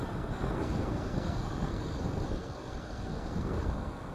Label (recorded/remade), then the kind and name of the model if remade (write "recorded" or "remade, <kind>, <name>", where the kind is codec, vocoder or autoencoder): remade, codec, SNAC